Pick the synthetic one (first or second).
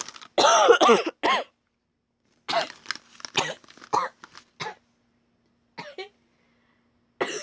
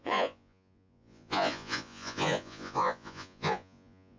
second